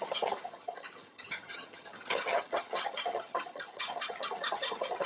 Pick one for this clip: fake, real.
fake